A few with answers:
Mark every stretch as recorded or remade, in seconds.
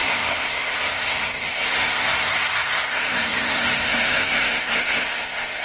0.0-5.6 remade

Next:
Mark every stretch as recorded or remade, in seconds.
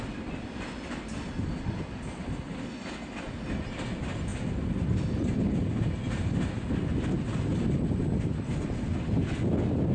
0.0-9.9 recorded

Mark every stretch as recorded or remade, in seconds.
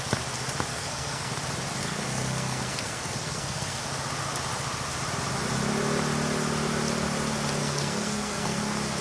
0.0-0.7 recorded; 0.7-1.3 remade; 1.3-1.8 recorded; 1.8-3.8 remade; 3.8-7.6 recorded; 7.6-8.6 remade; 8.6-9.0 recorded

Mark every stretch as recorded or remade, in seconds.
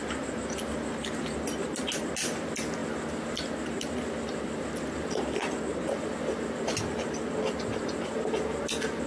0.0-9.1 recorded